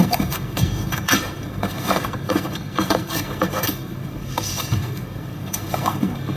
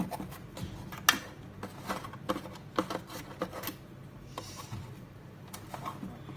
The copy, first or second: first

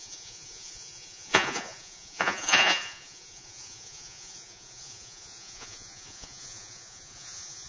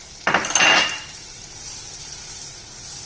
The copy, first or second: first